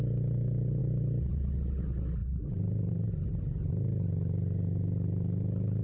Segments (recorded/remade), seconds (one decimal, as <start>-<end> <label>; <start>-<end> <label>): 0.0-2.2 recorded; 2.2-3.4 remade; 3.4-5.8 recorded